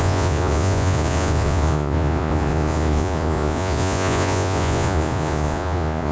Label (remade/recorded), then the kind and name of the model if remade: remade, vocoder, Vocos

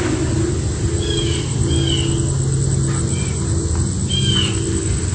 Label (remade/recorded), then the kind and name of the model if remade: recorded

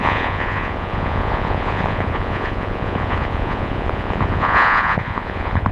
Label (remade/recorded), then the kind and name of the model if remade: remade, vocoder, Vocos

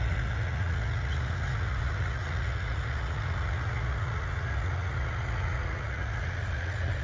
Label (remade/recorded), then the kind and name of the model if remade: remade, vocoder, Vocos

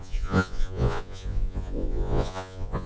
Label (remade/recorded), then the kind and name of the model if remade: remade, vocoder, Vocos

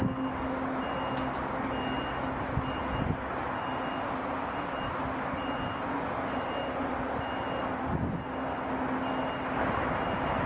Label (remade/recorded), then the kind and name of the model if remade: recorded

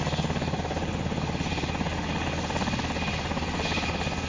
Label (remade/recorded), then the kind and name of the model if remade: recorded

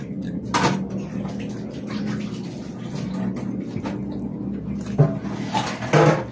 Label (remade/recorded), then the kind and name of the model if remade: recorded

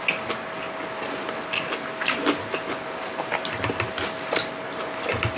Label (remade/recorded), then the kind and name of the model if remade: recorded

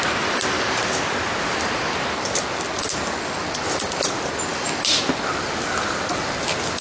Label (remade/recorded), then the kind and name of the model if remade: recorded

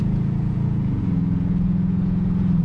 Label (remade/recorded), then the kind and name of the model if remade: remade, vocoder, Vocos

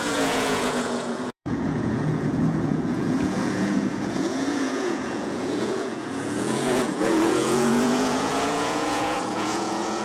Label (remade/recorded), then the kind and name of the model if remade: remade, vocoder, Vocos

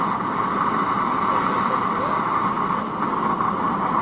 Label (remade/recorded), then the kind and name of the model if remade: recorded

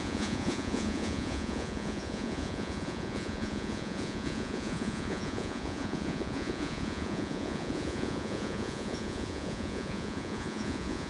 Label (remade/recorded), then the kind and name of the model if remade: remade, vocoder, Vocos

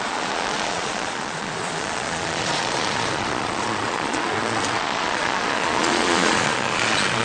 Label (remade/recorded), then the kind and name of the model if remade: remade, vocoder, Vocos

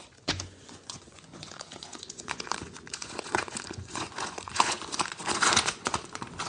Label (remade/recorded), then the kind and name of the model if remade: remade, vocoder, Vocos